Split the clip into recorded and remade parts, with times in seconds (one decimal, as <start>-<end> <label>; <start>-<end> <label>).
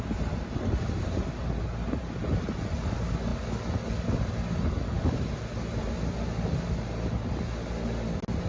0.0-8.5 recorded